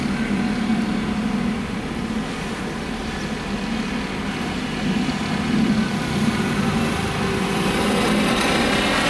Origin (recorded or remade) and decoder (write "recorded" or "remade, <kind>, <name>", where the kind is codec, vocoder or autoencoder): recorded